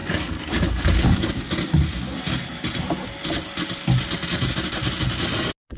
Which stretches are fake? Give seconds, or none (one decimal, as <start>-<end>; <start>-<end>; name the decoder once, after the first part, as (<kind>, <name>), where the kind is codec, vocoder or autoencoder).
0.0-1.3 (codec, DAC)